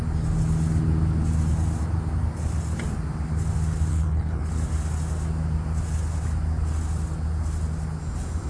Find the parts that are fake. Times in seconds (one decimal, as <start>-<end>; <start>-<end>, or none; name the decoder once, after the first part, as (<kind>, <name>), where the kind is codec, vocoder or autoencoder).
3.9-4.5 (codec, HILCodec)